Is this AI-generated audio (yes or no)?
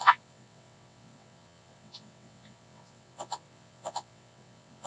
yes